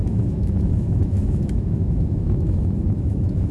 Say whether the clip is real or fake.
fake